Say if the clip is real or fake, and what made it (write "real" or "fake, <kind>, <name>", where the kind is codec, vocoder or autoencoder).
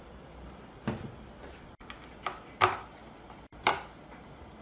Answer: real